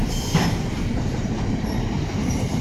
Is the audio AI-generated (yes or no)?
yes